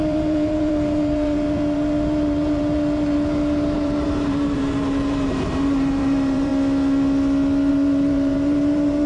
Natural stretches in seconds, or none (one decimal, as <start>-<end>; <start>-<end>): 6.5-7.7